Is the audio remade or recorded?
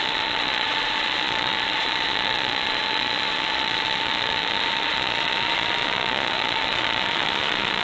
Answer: remade